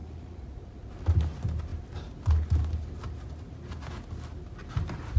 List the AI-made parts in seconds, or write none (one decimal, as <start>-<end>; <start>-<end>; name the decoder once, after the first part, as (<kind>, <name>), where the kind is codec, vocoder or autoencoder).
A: 0.0-0.9 (vocoder, Vocos)